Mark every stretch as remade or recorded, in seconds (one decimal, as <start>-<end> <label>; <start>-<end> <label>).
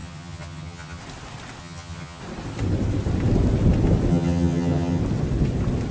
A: 0.0-1.0 remade; 1.0-1.6 recorded; 1.6-2.2 remade; 2.2-4.1 recorded; 4.1-5.0 remade; 5.0-5.9 recorded